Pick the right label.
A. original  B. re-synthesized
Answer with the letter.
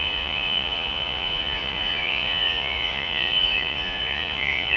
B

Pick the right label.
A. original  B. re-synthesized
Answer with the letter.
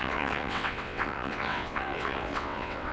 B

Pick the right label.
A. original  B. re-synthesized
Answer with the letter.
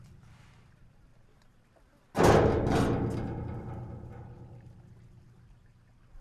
A